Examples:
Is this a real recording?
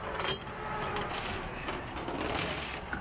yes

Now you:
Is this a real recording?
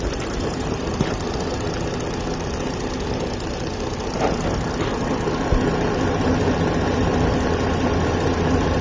yes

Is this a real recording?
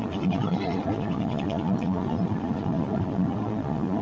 no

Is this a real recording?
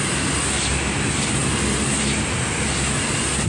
yes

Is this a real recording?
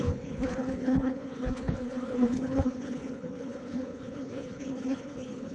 no